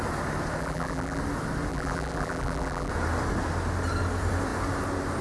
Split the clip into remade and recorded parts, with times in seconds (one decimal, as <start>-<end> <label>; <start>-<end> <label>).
0.0-0.6 recorded; 0.6-1.2 remade; 1.2-1.7 recorded; 1.7-2.9 remade; 2.9-5.2 recorded